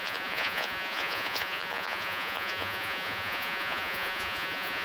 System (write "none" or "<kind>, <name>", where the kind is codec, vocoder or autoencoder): vocoder, Vocos